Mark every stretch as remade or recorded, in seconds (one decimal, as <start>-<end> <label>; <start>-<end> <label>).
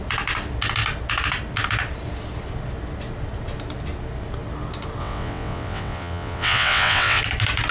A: 0.0-5.0 recorded; 5.0-7.2 remade; 7.2-7.7 recorded